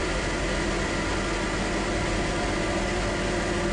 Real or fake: real